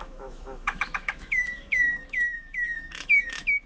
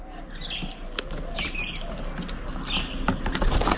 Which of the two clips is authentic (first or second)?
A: second